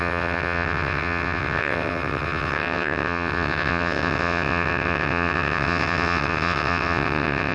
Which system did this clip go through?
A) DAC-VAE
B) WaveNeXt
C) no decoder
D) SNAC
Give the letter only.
B